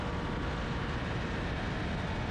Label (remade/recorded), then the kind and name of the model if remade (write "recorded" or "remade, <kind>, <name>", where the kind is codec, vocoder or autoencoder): recorded